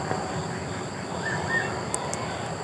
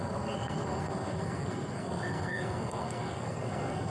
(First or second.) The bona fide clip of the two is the first